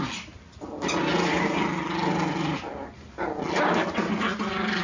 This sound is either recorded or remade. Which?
recorded